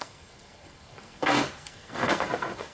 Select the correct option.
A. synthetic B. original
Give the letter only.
A